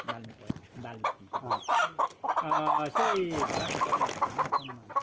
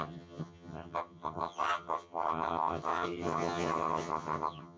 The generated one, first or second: second